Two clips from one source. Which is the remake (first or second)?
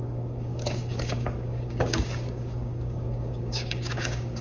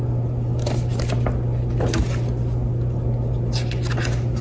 first